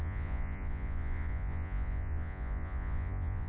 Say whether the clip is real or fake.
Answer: fake